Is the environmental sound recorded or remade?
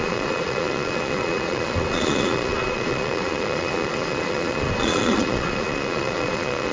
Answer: remade